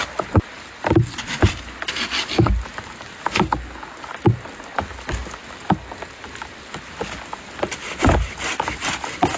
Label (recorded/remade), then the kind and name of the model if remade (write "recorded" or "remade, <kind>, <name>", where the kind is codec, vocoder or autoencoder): recorded